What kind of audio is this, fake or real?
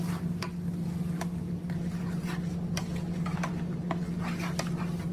real